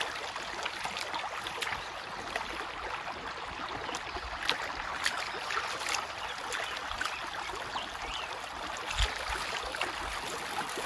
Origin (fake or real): real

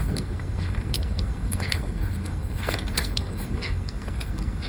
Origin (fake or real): fake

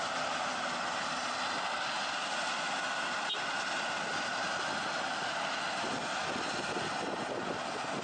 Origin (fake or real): real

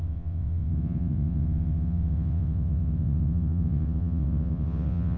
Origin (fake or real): fake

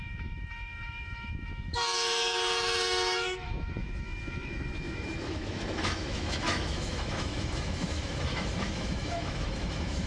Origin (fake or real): fake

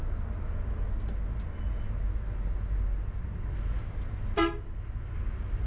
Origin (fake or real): real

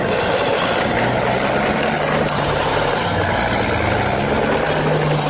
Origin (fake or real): real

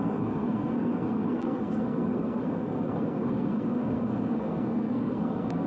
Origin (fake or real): fake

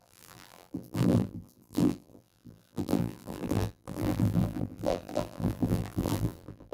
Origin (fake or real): fake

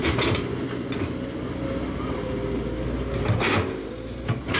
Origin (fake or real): real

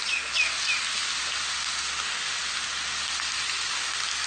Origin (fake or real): real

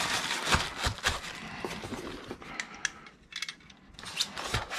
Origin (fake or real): real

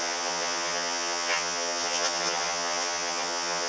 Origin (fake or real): fake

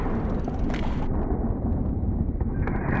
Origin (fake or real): fake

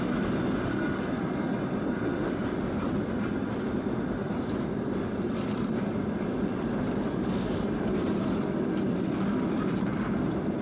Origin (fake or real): real